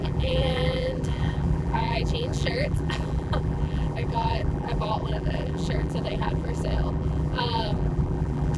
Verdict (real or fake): fake